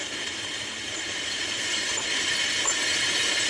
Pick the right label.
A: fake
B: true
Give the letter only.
A